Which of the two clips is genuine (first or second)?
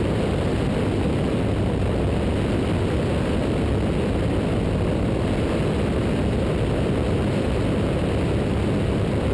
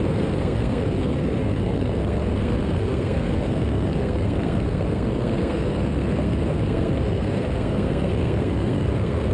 first